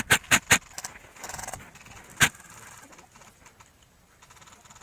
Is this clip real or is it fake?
real